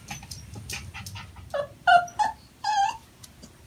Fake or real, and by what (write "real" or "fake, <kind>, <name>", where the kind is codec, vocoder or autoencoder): real